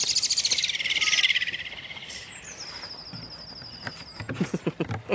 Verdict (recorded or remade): recorded